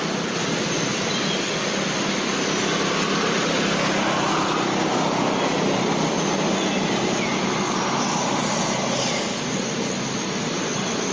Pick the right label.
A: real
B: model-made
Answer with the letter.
A